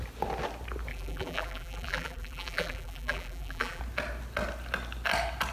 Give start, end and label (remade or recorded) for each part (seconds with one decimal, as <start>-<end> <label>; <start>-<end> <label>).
0.0-0.9 recorded; 0.9-3.8 remade; 3.8-5.5 recorded